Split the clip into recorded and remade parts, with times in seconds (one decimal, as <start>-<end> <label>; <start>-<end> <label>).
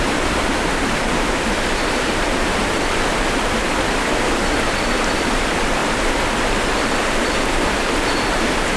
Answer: 0.0-4.4 remade; 4.4-5.1 recorded; 5.1-5.8 remade; 5.8-6.5 recorded; 6.5-8.8 remade